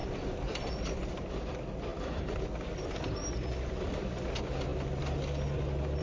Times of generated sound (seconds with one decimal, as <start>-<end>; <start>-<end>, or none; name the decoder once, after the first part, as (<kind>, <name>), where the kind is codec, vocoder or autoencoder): 0.0-1.1 (vocoder, BigVGAN v2); 1.9-4.2